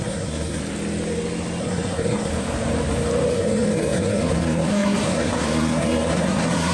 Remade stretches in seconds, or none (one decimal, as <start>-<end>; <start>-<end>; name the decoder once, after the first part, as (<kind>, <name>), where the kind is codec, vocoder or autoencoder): 0.0-0.6 (codec, SNAC); 1.6-2.3; 3.3-6.7